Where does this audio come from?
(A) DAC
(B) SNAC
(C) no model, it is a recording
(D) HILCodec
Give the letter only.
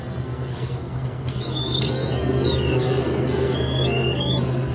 B